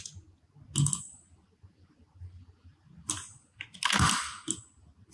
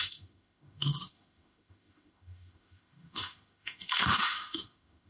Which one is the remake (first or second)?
second